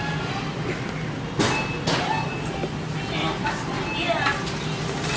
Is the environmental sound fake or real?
real